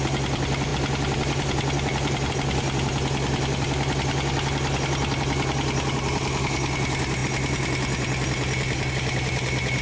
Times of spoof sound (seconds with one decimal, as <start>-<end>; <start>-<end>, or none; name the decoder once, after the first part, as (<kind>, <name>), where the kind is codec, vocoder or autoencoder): none